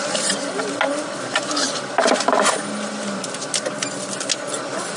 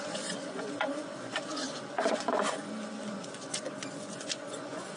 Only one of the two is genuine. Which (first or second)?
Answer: first